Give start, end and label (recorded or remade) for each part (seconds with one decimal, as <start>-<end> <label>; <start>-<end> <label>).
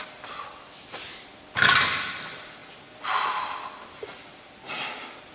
0.0-5.3 recorded